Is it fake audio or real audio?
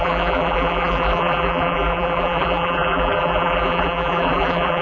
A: fake